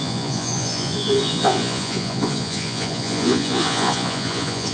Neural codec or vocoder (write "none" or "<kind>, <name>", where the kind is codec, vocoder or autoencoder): vocoder, Vocos